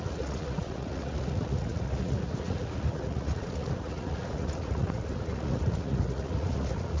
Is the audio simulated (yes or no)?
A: yes